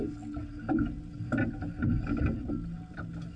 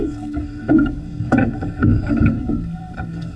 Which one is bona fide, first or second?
first